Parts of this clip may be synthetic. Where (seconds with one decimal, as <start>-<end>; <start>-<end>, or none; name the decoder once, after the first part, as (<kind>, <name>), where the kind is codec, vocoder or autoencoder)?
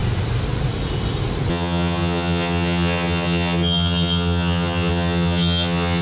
1.5-6.0 (vocoder, HiFi-GAN)